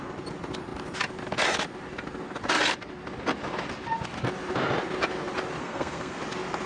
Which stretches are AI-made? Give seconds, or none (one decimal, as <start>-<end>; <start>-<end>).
5.6-6.2